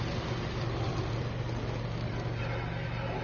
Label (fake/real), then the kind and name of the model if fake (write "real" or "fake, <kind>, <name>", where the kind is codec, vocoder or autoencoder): real